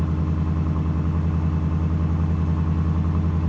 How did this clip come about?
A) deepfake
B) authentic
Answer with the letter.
B